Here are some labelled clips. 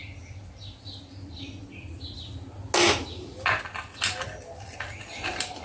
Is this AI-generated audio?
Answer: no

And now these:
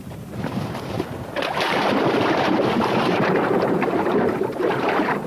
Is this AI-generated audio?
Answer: yes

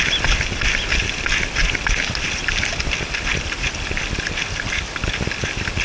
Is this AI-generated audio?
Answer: no